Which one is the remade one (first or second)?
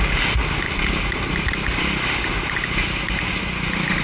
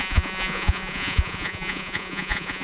second